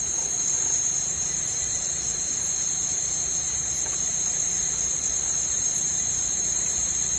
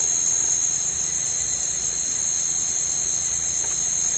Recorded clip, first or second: second